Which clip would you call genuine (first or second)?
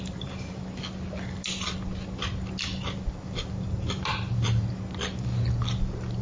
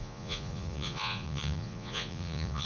first